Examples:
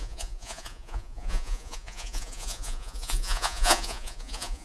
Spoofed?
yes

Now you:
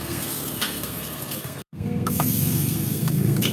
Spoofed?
yes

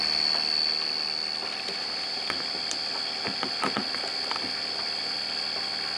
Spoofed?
no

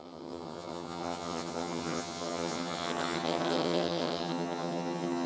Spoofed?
yes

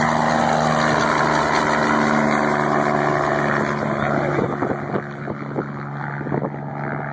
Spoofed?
no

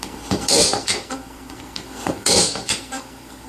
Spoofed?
yes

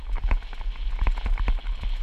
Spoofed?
no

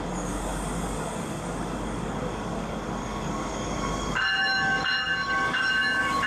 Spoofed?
yes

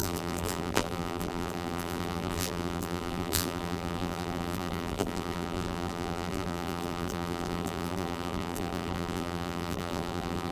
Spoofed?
yes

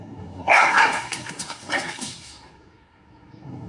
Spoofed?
yes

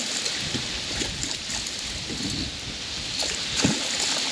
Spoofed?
no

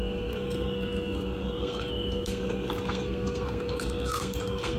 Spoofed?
yes